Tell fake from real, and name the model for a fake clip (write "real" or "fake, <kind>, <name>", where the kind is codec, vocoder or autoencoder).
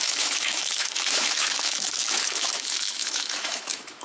fake, autoencoder, DAC-VAE